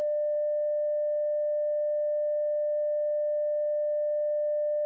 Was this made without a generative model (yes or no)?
yes